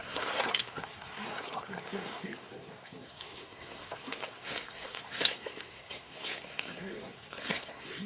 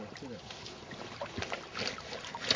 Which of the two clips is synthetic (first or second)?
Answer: first